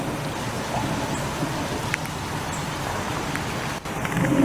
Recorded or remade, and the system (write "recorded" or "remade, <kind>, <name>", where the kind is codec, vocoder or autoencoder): recorded